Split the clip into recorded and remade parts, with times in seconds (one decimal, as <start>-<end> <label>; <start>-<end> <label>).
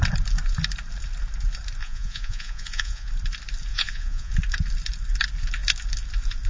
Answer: 0.0-1.8 recorded; 1.8-3.1 remade; 3.1-3.7 recorded; 3.7-4.3 remade; 4.3-6.5 recorded